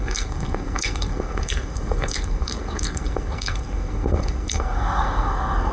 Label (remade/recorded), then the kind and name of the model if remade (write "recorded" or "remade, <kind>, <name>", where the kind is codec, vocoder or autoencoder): remade, codec, SNAC